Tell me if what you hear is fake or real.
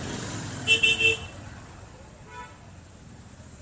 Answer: real